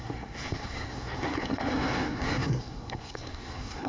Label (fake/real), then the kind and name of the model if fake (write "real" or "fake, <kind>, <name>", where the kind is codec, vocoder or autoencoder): fake, codec, SNAC